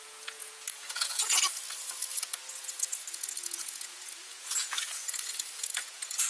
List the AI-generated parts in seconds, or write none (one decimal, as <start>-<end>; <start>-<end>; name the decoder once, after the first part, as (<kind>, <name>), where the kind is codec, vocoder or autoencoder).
0.0-6.3 (vocoder, Vocos)